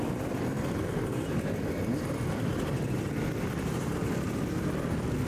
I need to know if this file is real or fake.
real